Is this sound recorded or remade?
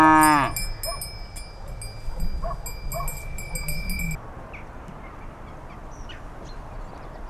recorded